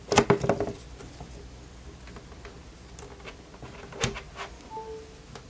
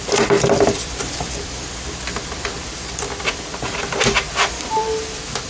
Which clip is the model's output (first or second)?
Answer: second